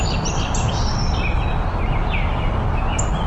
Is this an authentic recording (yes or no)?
yes